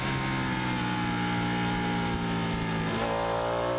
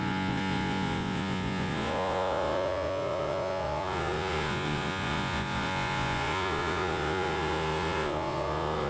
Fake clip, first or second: second